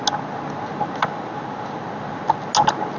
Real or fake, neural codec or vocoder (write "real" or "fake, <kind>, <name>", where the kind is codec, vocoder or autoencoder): real